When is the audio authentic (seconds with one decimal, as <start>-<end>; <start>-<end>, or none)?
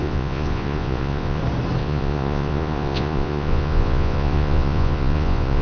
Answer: 1.4-1.8